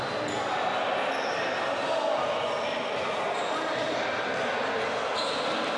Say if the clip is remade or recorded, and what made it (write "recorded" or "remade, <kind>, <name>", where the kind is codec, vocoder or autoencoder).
recorded